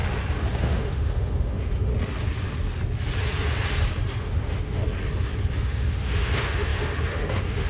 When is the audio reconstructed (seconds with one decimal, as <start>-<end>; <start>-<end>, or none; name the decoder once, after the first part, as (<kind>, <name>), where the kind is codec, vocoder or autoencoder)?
0.5-1.9 (autoencoder, DAC-VAE); 4.2-4.8; 5.6-7.7